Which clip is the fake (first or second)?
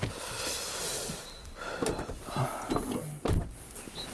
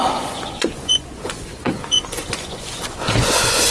second